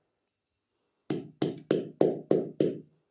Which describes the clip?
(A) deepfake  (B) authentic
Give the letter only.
B